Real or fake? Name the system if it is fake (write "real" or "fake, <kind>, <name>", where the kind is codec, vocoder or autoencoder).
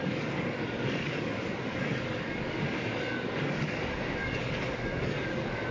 fake, codec, DAC